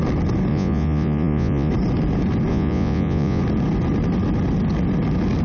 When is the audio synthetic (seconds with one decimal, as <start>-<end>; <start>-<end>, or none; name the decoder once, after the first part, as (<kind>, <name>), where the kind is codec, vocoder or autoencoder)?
0.5-1.7 (vocoder, Vocos); 2.5-3.4